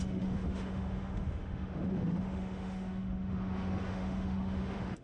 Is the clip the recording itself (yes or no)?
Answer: no